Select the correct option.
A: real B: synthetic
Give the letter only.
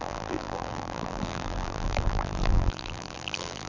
B